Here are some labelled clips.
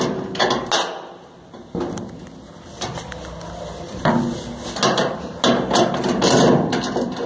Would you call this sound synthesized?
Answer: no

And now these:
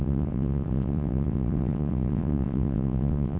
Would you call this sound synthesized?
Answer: yes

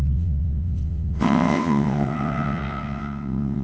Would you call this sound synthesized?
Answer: yes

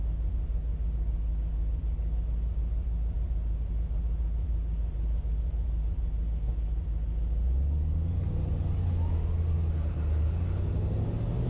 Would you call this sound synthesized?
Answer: no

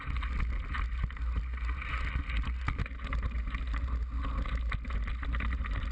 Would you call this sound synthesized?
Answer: no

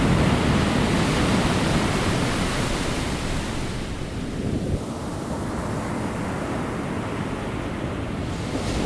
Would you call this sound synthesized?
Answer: no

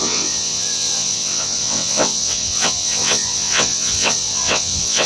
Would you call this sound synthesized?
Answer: yes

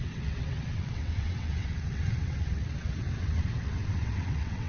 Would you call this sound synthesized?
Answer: yes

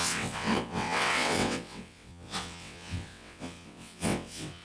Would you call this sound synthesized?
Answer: yes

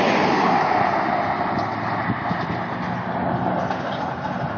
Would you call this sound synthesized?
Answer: no